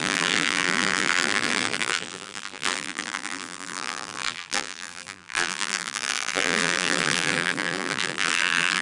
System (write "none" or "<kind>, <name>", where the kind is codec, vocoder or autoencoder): vocoder, BigVGAN v2